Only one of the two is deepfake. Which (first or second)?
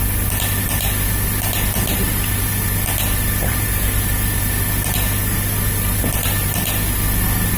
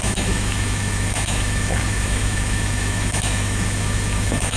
second